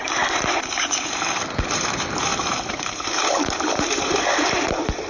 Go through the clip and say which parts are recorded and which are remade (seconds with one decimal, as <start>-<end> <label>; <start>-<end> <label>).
0.0-5.1 remade